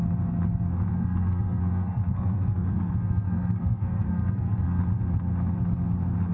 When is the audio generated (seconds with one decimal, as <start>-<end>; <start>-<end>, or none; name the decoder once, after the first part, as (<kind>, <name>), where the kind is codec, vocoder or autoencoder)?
1.0-4.8 (codec, SNAC)